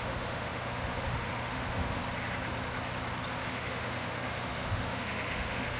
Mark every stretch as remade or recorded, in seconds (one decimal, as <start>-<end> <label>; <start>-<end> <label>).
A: 0.0-2.0 remade; 2.0-3.3 recorded; 3.3-5.8 remade